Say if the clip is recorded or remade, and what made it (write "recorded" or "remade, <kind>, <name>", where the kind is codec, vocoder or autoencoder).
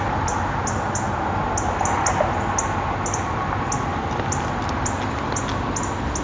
recorded